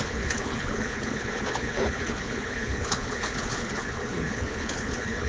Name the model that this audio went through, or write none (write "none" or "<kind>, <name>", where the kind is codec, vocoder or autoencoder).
codec, HILCodec